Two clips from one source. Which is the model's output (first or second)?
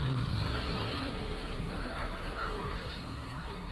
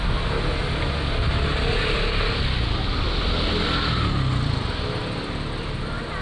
first